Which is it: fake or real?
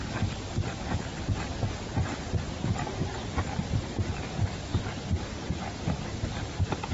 real